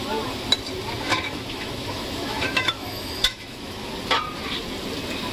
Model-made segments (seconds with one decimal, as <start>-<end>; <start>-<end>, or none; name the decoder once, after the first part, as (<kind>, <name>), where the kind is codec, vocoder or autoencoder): 1.1-3.9 (autoencoder, DAC-VAE)